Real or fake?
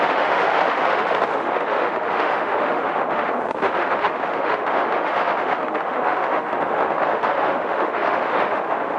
fake